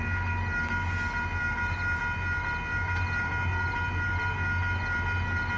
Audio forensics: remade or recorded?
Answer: recorded